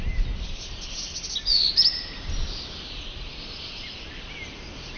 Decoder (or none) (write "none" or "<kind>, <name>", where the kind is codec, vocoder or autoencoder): none